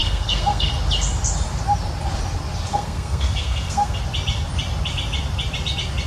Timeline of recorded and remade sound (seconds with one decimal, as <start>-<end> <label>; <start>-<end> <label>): 0.0-0.7 remade; 0.7-2.7 recorded; 2.7-4.0 remade; 4.0-6.1 recorded